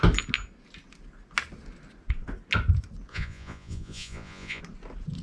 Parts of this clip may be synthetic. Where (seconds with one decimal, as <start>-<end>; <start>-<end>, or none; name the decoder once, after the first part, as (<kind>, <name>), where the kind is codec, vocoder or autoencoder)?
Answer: 3.1-4.6 (vocoder, Vocos)

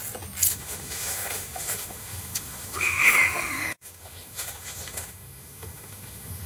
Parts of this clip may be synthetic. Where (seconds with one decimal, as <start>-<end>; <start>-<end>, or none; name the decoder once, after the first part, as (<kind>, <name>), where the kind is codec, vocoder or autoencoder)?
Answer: 0.5-6.5 (autoencoder, DAC-VAE)